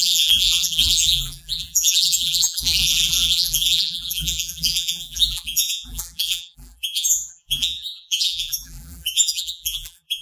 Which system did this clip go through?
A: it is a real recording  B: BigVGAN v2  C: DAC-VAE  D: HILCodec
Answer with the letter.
B